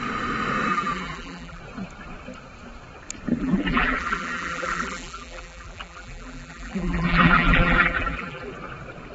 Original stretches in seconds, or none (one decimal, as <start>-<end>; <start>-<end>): 0.0-0.7; 1.6-3.4; 8.5-9.1